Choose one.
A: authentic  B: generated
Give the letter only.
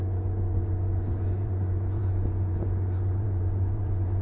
B